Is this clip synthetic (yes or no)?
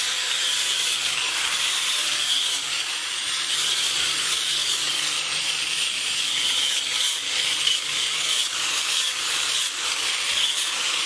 yes